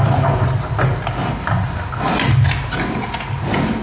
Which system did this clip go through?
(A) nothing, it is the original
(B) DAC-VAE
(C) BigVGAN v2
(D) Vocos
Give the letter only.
A